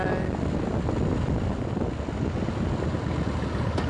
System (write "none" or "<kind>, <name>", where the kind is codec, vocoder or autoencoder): none